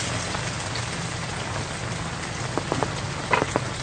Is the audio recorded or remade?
recorded